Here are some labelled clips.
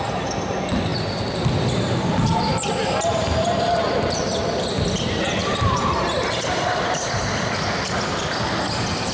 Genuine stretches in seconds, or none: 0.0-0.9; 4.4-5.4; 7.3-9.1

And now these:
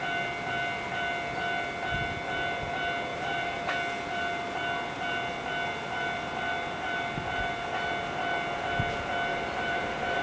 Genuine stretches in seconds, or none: 0.0-3.1; 3.7-9.3

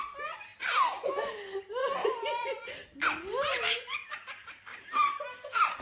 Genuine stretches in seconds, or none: 0.0-1.8; 2.7-4.7; 5.3-5.8

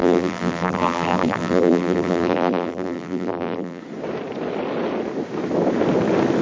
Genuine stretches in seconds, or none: 3.8-6.4

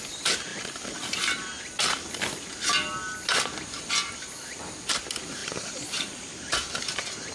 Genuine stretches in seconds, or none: 0.0-0.5; 1.5-5.4; 6.8-7.3

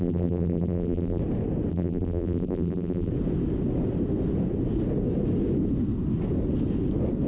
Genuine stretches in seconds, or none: 1.2-1.7; 3.1-7.3

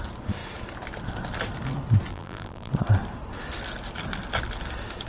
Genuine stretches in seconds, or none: 0.0-2.1; 2.7-5.1